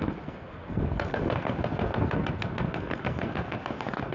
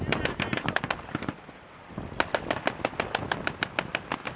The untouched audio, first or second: second